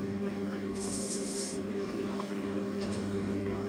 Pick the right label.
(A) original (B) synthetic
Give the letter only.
B